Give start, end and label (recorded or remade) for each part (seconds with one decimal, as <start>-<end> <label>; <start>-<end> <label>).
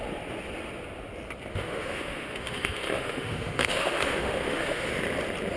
0.0-1.5 recorded; 1.5-4.9 remade; 4.9-5.6 recorded